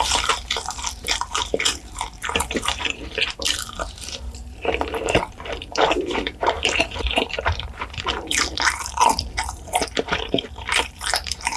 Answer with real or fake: fake